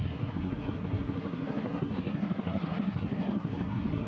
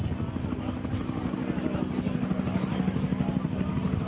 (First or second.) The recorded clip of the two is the second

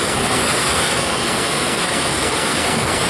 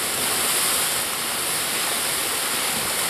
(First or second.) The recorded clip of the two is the second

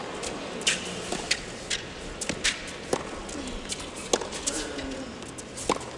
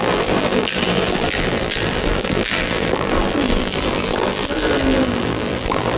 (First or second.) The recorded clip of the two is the first